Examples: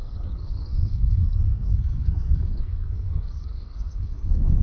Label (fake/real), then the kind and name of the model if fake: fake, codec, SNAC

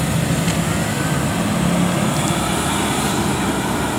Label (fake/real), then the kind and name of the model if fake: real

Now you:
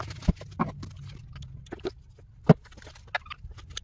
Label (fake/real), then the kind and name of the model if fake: real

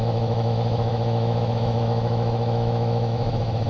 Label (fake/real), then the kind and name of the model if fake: fake, autoencoder, DAC-VAE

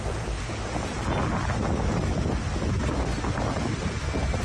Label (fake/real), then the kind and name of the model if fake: real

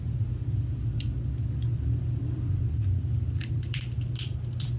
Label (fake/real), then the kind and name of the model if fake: real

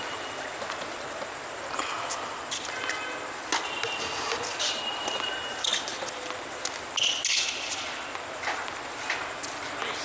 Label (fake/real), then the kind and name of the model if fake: real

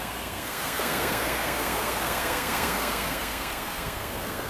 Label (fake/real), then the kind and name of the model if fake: fake, codec, SNAC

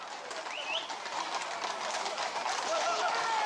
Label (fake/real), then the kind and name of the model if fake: real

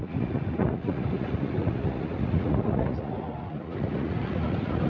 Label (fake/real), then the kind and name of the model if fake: fake, vocoder, Vocos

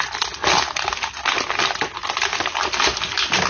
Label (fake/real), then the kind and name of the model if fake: real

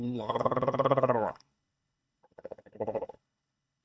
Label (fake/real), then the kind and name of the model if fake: fake, codec, HILCodec